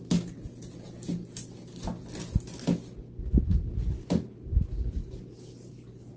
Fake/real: real